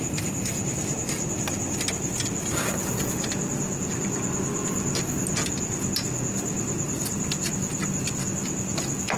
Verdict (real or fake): real